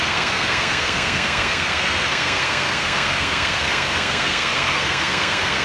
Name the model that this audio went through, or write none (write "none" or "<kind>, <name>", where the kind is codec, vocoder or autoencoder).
codec, SNAC